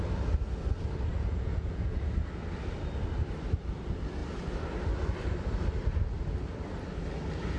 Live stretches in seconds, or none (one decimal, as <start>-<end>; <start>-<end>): 0.0-1.1; 2.0-7.6